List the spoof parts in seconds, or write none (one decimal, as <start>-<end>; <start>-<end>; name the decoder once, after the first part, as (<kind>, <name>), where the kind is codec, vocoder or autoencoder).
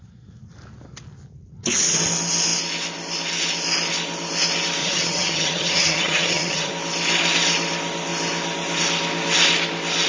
4.8-6.7 (vocoder, HiFi-GAN)